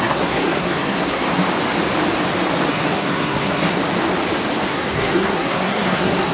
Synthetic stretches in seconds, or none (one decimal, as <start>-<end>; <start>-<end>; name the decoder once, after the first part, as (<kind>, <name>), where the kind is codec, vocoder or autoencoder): 0.0-1.2 (codec, SNAC); 2.7-3.8; 4.7-6.3